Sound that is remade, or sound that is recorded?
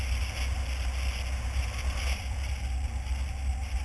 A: recorded